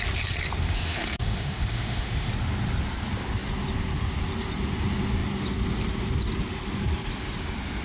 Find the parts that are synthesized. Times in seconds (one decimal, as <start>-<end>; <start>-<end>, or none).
0.6-2.3